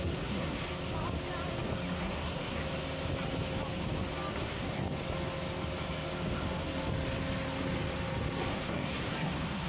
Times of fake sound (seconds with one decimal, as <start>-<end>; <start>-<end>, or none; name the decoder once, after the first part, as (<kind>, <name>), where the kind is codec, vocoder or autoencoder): 0.0-0.7 (codec, SNAC); 2.0-2.6; 4.3-4.8; 8.5-9.7